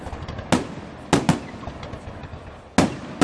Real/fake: real